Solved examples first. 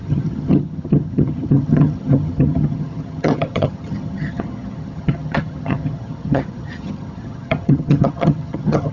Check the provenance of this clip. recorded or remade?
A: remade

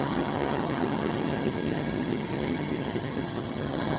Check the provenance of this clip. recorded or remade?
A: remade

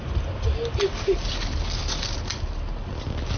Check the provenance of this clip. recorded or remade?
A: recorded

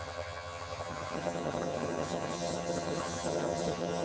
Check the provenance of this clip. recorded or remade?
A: remade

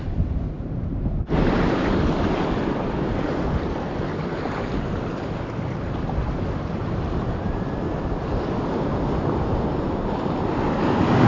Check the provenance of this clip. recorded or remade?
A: recorded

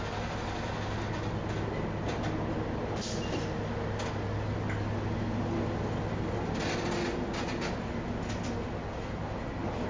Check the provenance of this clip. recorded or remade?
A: recorded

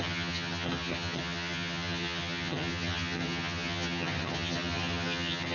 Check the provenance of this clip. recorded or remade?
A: remade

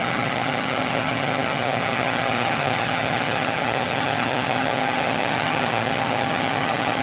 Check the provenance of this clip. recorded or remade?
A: remade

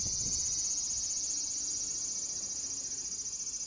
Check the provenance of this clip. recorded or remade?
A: recorded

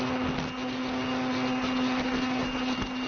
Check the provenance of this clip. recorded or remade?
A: recorded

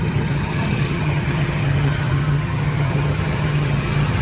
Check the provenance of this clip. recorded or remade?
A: remade